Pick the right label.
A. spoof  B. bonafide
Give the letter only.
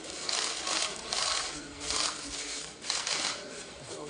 A